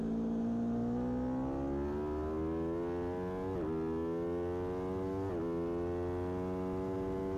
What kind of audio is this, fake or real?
real